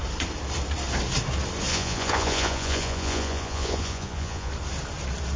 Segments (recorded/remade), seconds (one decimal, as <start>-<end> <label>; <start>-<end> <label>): 0.0-1.7 recorded; 1.7-4.5 remade; 4.5-5.4 recorded